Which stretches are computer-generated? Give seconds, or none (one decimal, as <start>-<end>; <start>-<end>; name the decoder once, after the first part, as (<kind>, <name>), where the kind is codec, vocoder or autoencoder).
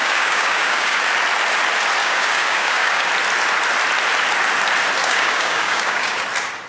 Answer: 0.0-1.0 (codec, DAC); 2.0-3.1; 5.0-6.2